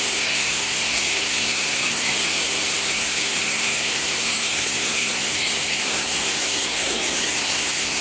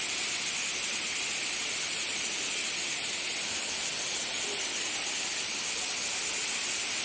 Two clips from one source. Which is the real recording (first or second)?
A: second